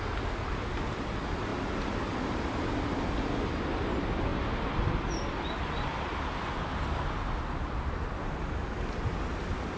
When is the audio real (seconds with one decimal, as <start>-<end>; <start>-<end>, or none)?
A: 0.0-9.8